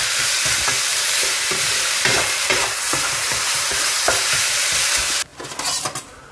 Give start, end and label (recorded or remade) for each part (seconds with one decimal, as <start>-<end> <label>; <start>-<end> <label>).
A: 0.0-0.9 recorded; 0.9-4.7 remade; 4.7-6.3 recorded